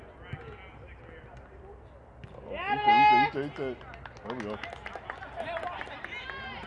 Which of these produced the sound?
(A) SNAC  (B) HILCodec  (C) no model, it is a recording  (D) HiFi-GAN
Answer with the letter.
C